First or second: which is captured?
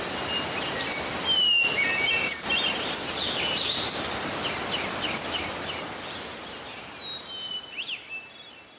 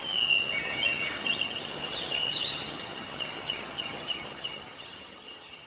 first